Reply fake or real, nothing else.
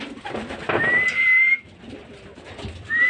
real